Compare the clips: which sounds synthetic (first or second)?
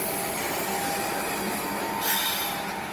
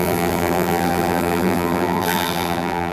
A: second